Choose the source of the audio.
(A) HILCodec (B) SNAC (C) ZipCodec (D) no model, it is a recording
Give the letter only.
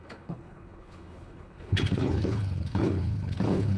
A